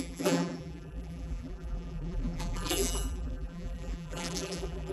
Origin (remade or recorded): remade